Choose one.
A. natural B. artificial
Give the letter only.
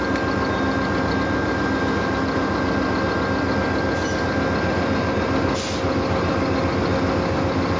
A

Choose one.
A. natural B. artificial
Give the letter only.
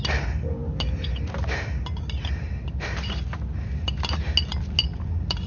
A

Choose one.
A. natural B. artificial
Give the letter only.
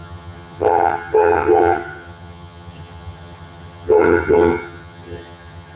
B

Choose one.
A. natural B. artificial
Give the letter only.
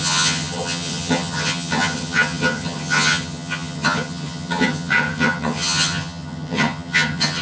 B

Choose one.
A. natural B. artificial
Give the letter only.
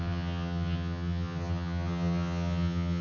B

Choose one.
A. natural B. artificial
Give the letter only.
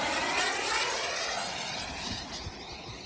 A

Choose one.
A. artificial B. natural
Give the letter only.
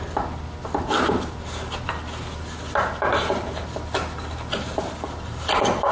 B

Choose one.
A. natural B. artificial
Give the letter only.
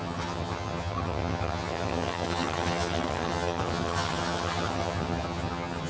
B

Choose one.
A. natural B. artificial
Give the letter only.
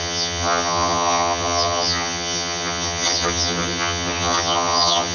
B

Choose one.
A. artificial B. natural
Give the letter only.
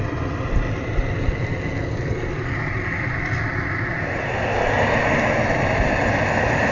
B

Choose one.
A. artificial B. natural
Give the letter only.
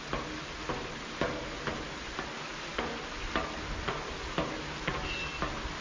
B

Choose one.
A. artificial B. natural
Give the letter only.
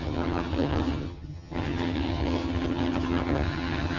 A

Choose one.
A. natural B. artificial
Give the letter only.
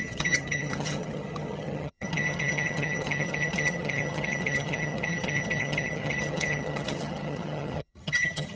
B